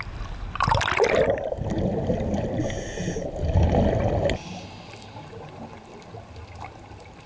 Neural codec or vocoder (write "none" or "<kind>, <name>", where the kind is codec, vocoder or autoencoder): none